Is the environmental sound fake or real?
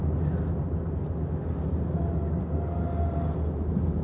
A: real